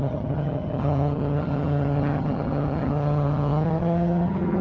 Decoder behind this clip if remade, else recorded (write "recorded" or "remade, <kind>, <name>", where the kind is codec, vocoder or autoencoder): remade, vocoder, HiFi-GAN